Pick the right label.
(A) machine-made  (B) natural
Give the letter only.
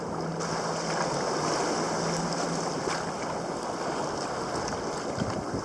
B